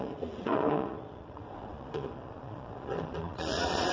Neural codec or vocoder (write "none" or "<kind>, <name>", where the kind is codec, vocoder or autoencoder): vocoder, Vocos